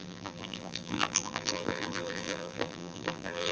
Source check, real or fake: fake